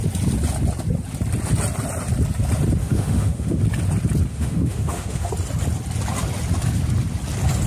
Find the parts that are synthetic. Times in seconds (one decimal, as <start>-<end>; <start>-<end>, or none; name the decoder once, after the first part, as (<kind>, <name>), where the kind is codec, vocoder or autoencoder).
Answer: 2.8-3.6 (autoencoder, DAC-VAE); 4.3-5.3